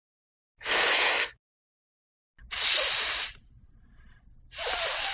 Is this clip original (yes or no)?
yes